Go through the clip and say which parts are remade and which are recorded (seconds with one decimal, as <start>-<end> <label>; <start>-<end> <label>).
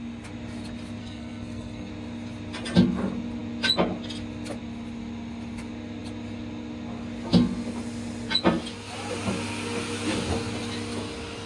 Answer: 0.0-1.0 recorded; 1.0-1.9 remade; 1.9-11.5 recorded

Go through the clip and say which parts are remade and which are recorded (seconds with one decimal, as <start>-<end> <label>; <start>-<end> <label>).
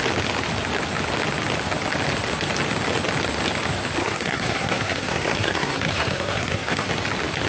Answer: 0.0-4.0 recorded; 4.0-6.9 remade; 6.9-7.5 recorded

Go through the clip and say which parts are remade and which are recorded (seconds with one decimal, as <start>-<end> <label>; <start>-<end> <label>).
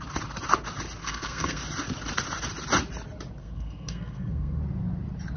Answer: 0.0-1.0 recorded; 1.0-1.6 remade; 1.6-3.4 recorded; 3.4-4.6 remade; 4.6-5.4 recorded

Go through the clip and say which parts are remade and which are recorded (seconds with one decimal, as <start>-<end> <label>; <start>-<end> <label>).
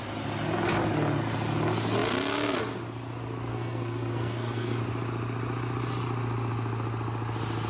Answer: 0.0-3.5 recorded; 3.5-4.8 remade; 4.8-7.7 recorded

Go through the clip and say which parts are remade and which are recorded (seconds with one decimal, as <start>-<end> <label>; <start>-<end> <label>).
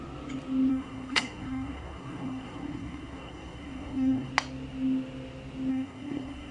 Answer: 0.0-0.7 recorded; 0.7-4.3 remade; 4.3-5.7 recorded; 5.7-6.5 remade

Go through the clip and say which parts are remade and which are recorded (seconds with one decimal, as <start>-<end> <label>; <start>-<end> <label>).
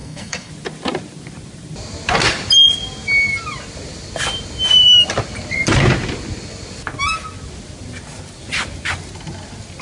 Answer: 0.0-0.5 remade; 0.5-9.8 recorded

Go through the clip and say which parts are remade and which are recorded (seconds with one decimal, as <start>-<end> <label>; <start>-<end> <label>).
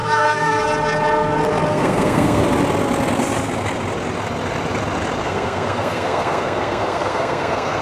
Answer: 0.0-0.6 remade; 0.6-1.7 recorded; 1.7-2.4 remade; 2.4-5.2 recorded; 5.2-7.8 remade